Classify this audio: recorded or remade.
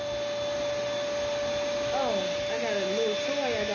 recorded